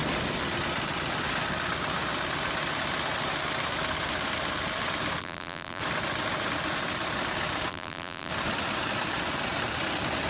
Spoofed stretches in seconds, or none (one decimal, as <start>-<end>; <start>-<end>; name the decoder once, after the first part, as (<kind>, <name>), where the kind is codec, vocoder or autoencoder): 5.2-5.8 (vocoder, BigVGAN v2); 7.7-8.3